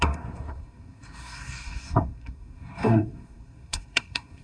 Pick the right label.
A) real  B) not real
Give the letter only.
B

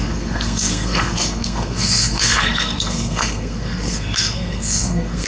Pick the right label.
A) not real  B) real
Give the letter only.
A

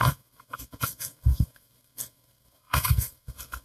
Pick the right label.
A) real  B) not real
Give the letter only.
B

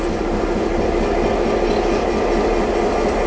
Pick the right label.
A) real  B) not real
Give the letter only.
A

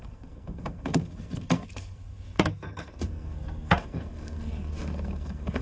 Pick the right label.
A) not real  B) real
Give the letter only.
A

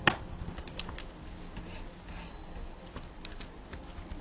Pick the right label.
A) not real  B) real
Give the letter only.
B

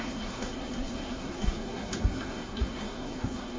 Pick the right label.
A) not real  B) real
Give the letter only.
A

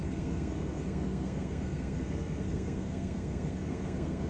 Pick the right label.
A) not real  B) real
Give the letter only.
A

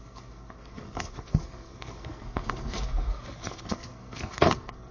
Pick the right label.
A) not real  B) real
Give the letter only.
A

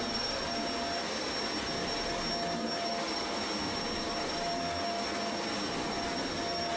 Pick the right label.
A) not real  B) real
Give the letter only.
B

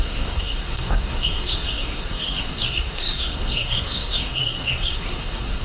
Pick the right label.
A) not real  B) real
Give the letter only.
A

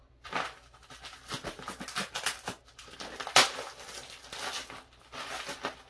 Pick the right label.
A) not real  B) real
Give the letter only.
B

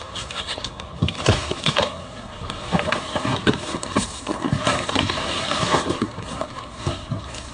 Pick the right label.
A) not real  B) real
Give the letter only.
A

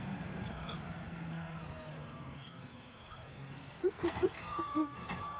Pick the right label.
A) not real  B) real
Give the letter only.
A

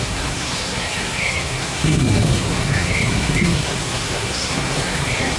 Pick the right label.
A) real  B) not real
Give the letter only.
B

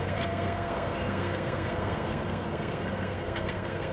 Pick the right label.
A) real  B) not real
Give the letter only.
B